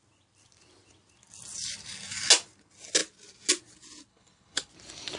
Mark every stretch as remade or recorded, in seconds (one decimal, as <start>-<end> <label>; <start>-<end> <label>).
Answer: 0.0-4.1 recorded; 4.1-4.7 remade; 4.7-5.2 recorded